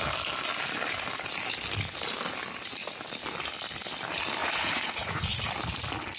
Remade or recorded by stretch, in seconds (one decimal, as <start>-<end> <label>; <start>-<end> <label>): 0.0-4.4 recorded; 4.4-5.4 remade; 5.4-6.2 recorded